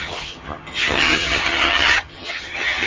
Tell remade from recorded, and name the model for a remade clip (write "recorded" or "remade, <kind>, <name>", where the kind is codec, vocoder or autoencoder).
remade, vocoder, HiFi-GAN